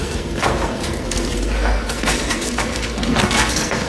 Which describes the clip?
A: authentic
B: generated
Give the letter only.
B